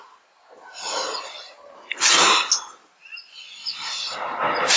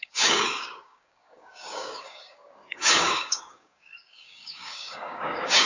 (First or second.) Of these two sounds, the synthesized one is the second